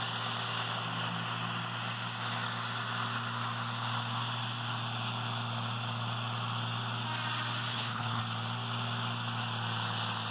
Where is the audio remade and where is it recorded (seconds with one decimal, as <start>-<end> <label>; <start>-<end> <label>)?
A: 0.0-7.7 recorded; 7.7-8.2 remade; 8.2-10.3 recorded